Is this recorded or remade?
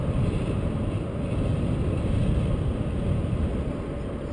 recorded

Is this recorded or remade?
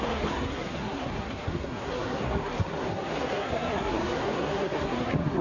remade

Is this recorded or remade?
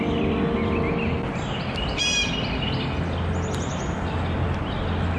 recorded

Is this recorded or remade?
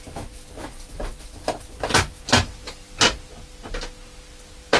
recorded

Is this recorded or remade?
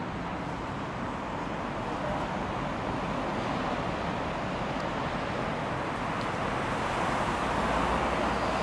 recorded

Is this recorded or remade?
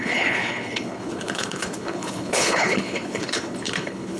remade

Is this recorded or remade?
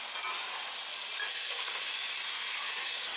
recorded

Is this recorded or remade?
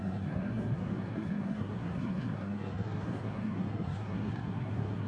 remade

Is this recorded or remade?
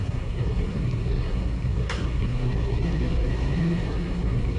remade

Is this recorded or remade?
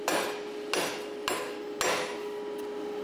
recorded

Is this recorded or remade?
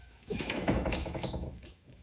remade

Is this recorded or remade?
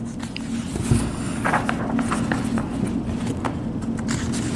recorded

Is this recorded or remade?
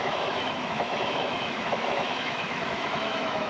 remade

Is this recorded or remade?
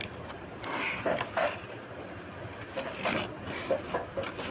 recorded